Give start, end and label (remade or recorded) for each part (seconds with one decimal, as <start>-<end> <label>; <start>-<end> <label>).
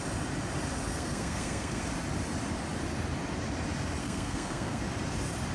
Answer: 0.0-0.9 recorded; 0.9-1.8 remade; 1.8-4.0 recorded; 4.0-4.8 remade; 4.8-5.5 recorded